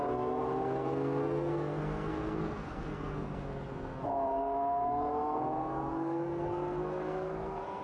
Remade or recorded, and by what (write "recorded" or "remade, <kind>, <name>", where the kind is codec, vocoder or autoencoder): remade, codec, SNAC